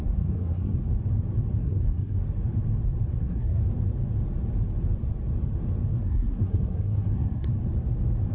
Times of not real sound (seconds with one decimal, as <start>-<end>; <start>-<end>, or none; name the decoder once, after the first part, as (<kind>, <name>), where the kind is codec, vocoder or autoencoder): 0.0-0.8 (codec, SNAC); 1.6-2.2; 3.2-3.6; 5.9-7.5